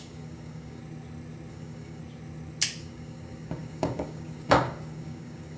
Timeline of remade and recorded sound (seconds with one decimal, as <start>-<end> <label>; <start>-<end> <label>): 0.0-0.8 remade; 0.8-1.5 recorded; 1.5-2.0 remade; 2.0-2.8 recorded; 2.8-5.6 remade